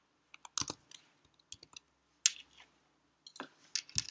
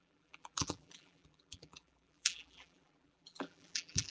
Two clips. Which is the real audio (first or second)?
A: first